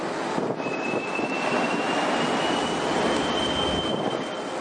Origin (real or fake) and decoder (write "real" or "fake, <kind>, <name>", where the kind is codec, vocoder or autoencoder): real